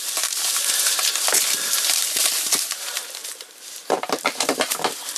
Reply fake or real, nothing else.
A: fake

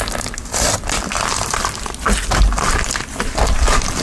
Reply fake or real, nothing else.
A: fake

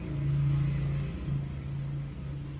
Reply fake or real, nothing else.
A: real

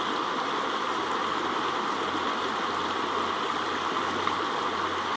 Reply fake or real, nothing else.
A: real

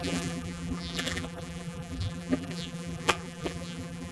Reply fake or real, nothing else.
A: fake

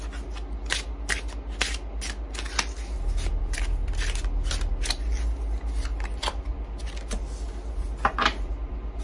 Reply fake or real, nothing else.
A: real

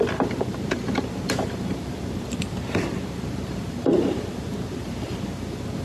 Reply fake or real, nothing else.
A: fake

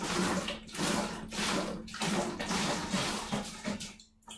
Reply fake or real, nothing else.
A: real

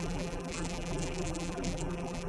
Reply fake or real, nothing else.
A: fake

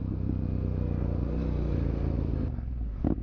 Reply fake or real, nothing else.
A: real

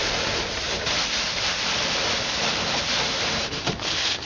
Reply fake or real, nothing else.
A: fake